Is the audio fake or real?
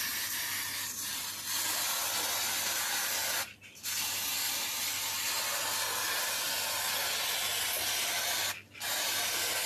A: real